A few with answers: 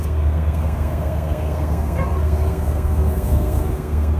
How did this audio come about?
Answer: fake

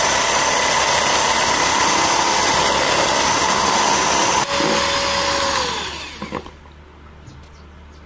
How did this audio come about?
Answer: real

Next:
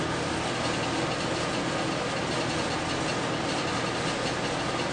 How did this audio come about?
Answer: real